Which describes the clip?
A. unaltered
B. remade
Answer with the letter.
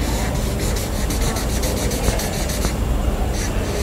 A